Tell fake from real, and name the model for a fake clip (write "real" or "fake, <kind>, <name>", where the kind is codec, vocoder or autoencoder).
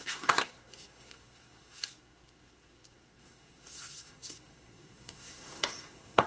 fake, codec, SNAC